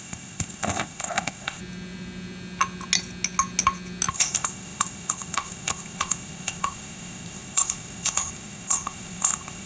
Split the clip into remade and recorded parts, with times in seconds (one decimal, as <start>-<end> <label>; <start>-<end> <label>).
0.0-1.6 remade; 1.6-4.1 recorded; 4.1-9.7 remade